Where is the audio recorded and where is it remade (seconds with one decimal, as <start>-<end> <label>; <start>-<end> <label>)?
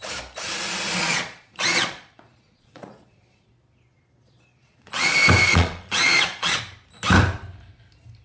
0.0-1.0 recorded; 1.0-3.5 remade; 3.5-3.9 recorded; 3.9-5.1 remade; 5.1-5.5 recorded; 5.5-6.6 remade; 6.6-8.2 recorded